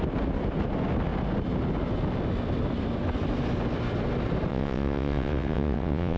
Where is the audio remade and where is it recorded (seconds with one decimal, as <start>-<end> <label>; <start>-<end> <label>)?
0.0-4.5 recorded; 4.5-6.2 remade